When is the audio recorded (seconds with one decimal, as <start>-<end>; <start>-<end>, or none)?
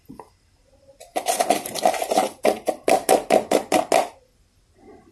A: 0.0-5.1